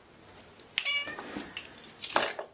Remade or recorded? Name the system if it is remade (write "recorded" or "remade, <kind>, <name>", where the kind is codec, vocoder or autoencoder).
recorded